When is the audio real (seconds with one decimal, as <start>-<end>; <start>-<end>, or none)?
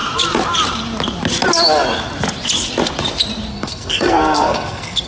0.0-3.5